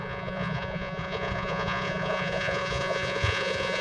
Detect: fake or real fake